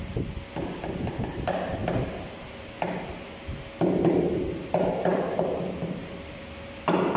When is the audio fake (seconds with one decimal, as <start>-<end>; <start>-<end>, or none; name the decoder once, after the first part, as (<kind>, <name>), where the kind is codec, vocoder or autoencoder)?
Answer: 5.1-6.4 (vocoder, BigVGAN v2)